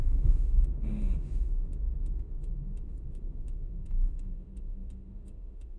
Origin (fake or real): fake